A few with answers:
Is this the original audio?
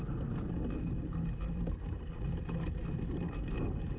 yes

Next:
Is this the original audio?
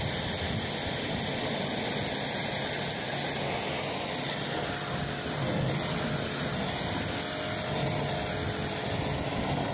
yes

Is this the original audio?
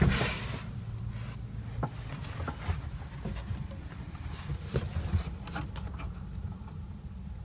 yes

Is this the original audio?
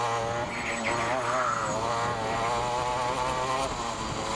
yes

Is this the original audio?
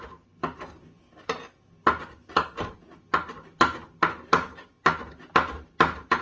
yes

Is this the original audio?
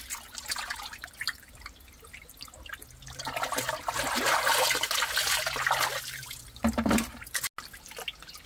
yes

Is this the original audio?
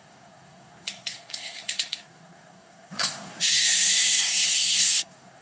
no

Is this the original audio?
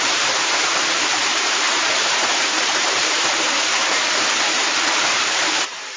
no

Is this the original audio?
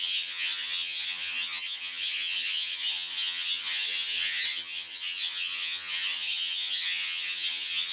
no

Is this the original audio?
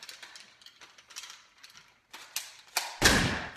yes